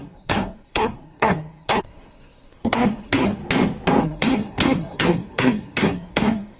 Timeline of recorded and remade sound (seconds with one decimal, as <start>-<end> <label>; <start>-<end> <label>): 0.0-3.4 remade; 3.4-4.0 recorded; 4.0-6.6 remade

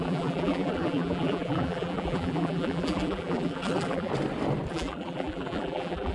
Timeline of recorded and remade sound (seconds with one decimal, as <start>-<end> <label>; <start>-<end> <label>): 0.0-4.1 remade; 4.1-4.7 recorded; 4.7-6.1 remade